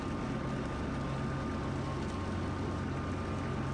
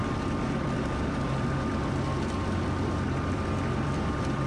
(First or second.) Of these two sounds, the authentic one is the first